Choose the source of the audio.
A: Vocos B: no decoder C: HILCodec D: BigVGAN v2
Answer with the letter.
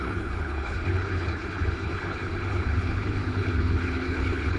C